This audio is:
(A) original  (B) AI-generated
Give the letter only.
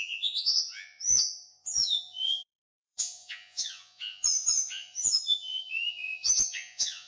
B